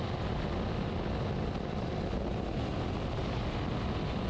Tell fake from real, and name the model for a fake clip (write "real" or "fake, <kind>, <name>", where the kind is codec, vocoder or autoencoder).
real